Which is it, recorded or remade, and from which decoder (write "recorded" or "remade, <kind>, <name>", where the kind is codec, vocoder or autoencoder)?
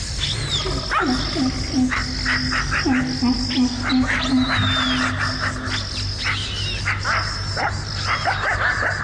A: recorded